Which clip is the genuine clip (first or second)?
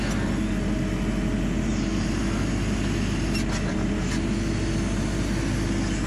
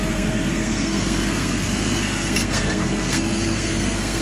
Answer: first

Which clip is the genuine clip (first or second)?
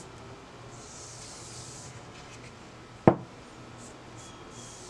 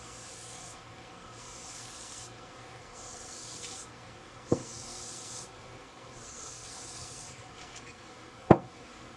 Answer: first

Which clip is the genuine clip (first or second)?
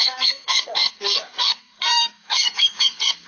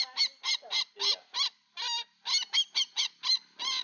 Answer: second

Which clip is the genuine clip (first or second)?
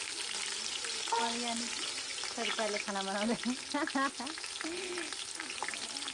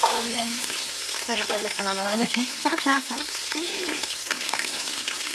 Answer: first